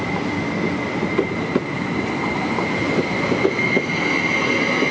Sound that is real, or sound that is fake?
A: real